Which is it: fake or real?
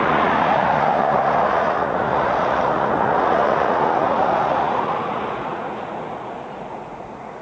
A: fake